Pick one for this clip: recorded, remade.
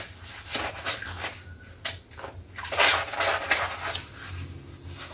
recorded